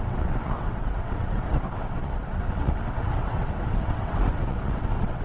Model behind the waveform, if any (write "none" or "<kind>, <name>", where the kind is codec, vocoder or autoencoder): vocoder, WaveNeXt